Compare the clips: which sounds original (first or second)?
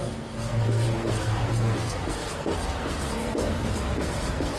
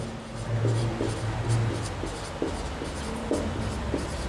second